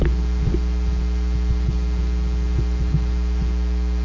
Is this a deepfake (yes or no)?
no